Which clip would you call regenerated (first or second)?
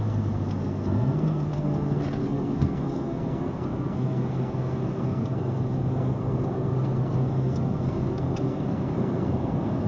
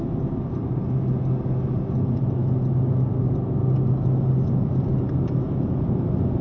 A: first